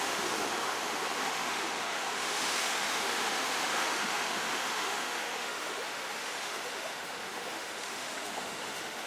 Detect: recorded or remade remade